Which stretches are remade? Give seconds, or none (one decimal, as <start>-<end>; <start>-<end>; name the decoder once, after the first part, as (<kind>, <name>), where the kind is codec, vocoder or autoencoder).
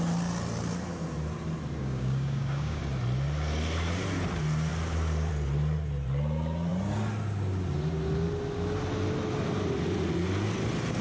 1.8-2.8 (codec, DAC)